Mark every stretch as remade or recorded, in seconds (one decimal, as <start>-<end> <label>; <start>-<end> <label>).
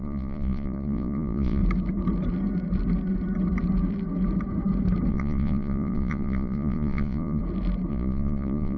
0.0-1.6 remade; 1.6-5.1 recorded; 5.1-7.4 remade; 7.4-7.9 recorded; 7.9-8.8 remade